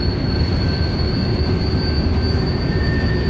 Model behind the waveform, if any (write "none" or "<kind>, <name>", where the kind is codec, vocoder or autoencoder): none